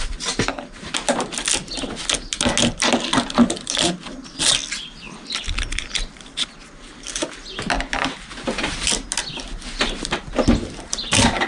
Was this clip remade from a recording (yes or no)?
no